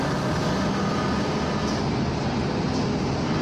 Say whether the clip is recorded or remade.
recorded